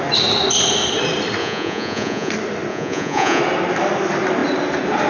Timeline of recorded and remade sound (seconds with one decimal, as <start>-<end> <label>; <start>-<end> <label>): 0.0-1.4 recorded; 1.4-2.3 remade; 2.3-2.7 recorded; 2.7-3.4 remade; 3.4-5.1 recorded